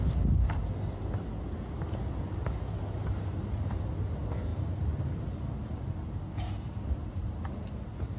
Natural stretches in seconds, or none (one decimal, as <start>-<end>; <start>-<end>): 0.0-8.2